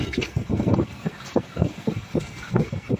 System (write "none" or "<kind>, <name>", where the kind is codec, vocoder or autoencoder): codec, SNAC